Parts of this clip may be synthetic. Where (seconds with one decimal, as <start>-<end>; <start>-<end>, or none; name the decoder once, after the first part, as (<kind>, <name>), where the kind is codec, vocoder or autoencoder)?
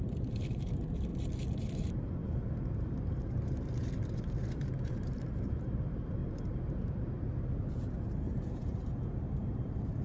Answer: 0.0-1.1 (vocoder, BigVGAN v2); 1.8-10.0